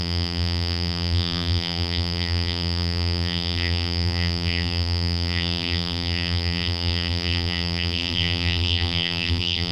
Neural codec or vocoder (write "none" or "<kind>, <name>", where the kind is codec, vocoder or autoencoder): vocoder, BigVGAN v2